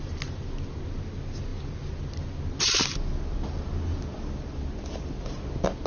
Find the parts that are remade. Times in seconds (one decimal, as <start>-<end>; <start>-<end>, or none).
none